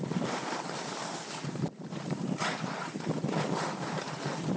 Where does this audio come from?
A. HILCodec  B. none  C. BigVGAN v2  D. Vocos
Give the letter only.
C